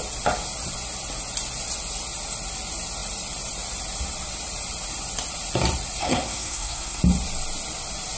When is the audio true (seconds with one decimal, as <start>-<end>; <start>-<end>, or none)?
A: 0.0-6.0; 7.0-8.2